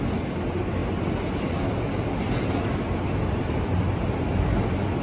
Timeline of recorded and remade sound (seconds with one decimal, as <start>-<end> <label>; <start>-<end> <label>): 0.0-5.0 recorded